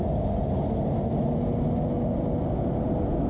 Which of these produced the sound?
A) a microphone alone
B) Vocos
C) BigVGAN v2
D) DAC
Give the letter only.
A